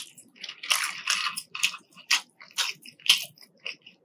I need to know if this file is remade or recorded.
remade